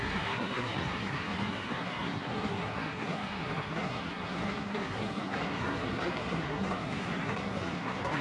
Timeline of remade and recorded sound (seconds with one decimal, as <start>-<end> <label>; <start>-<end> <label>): 0.0-8.2 remade